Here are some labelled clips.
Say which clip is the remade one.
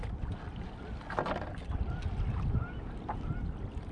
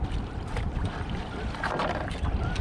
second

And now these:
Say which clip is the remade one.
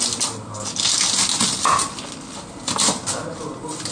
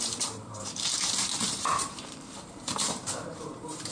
second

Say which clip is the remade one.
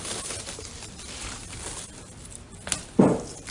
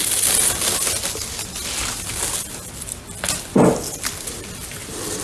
first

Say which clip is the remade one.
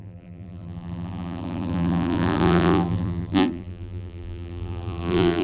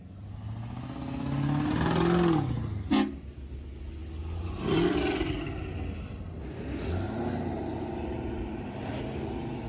first